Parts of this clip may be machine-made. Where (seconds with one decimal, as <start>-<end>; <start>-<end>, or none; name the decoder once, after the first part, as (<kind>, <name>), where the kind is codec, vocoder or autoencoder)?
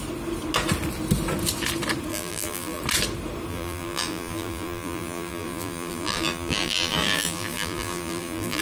2.1-2.8 (vocoder, BigVGAN v2); 3.5-8.6